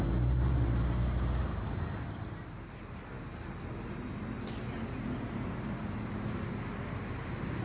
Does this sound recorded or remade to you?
recorded